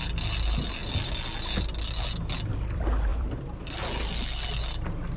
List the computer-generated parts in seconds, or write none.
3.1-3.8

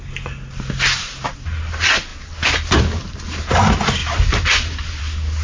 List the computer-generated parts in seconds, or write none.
4.0-5.0

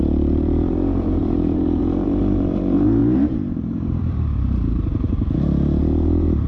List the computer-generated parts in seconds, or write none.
0.0-6.5

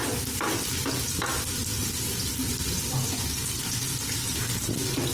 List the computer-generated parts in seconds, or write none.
1.3-2.0